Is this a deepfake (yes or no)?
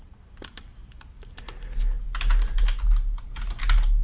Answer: no